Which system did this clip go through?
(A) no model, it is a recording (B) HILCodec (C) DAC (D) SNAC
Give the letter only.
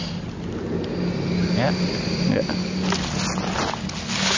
A